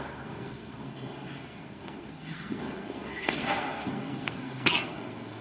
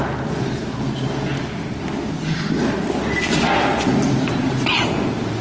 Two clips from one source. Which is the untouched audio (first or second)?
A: second